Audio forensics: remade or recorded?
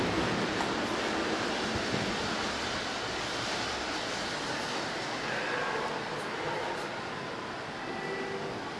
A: recorded